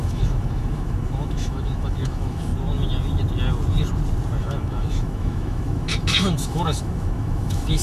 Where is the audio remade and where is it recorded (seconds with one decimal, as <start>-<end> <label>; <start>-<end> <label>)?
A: 0.0-2.5 remade; 2.5-4.4 recorded; 4.4-7.8 remade